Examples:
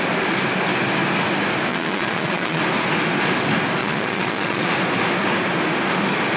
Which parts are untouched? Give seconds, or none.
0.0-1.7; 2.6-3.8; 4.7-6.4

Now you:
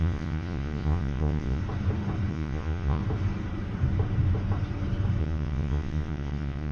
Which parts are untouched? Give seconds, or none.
1.6-2.3; 3.0-5.2

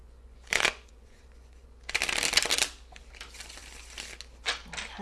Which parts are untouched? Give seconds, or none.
1.9-5.0

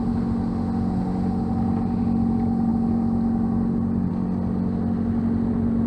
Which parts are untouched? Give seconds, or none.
0.0-5.9

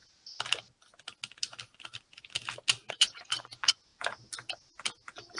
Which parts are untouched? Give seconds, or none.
0.0-2.9; 3.9-5.4

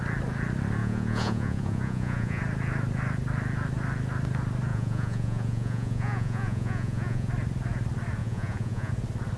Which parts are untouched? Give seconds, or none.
0.0-0.8; 2.4-4.7; 7.3-8.2; 8.9-9.4

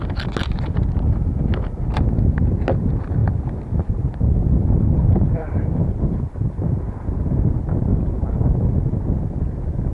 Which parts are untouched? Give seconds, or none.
0.0-9.9

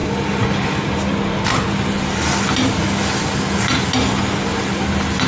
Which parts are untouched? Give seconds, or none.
0.0-5.3